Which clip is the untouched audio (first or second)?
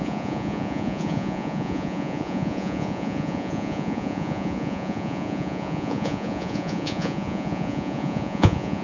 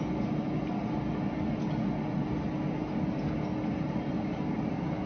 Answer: second